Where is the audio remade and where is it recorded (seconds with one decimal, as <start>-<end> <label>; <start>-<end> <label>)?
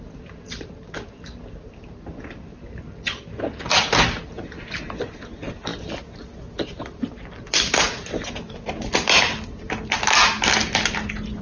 0.0-11.4 recorded